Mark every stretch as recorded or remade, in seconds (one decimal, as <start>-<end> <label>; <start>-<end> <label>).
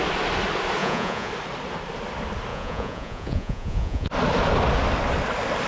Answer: 0.0-0.8 recorded; 0.8-1.3 remade; 1.3-2.5 recorded; 2.5-4.1 remade; 4.1-5.7 recorded